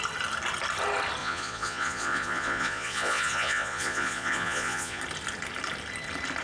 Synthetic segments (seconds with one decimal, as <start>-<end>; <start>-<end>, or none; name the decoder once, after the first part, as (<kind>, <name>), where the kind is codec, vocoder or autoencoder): 1.2-5.0 (vocoder, Vocos)